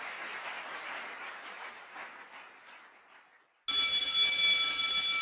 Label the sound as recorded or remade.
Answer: recorded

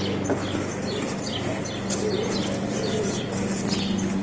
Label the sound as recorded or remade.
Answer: recorded